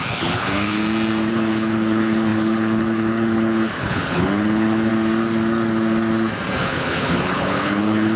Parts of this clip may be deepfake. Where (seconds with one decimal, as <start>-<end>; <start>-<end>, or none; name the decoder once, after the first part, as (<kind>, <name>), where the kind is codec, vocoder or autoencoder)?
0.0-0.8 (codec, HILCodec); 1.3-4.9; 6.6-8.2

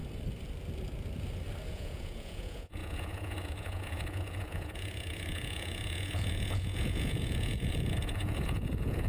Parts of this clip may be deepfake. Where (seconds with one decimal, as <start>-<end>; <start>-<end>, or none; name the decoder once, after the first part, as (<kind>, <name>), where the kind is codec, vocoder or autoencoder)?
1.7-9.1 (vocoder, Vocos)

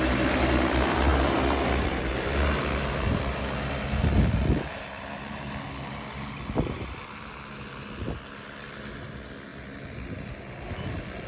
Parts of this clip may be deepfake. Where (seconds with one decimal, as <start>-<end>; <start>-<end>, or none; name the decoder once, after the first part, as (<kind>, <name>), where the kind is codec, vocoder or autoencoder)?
none